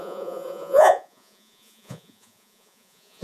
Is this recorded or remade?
remade